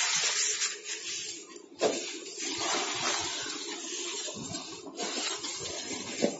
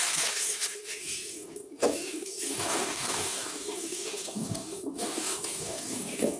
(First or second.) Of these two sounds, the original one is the first